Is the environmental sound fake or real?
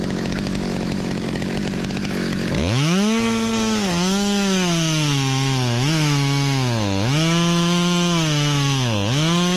fake